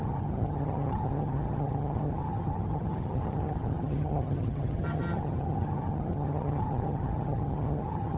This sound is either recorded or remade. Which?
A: remade